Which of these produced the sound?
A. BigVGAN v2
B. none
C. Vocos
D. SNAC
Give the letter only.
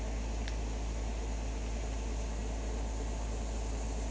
B